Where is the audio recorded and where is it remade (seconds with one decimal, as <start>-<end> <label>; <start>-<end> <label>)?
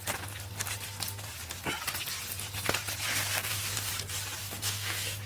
0.0-3.1 recorded; 3.1-3.9 remade; 3.9-4.4 recorded; 4.4-5.3 remade